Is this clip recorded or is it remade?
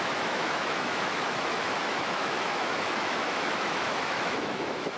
remade